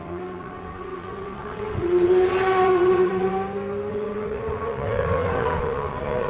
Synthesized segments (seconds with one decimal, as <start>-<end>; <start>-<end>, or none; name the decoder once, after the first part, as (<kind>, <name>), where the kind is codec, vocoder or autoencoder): 0.0-3.3 (vocoder, WaveNeXt); 3.9-6.3